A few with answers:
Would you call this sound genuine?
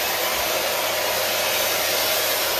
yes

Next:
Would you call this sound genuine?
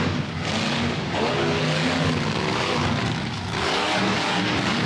no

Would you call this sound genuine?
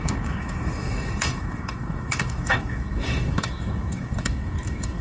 no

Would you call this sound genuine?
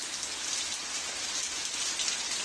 yes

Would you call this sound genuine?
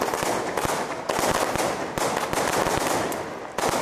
yes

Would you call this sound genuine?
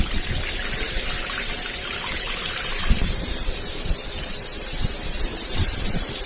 no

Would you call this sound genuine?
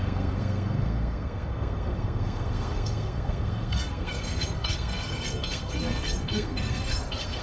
no